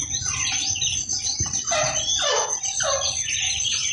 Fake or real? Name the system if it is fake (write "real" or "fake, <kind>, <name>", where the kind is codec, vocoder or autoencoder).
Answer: real